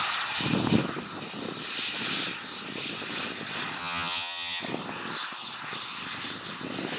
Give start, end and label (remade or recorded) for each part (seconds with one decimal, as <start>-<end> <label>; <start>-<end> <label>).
0.0-3.8 recorded; 3.8-4.6 remade; 4.6-7.0 recorded